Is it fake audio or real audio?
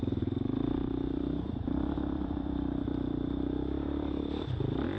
fake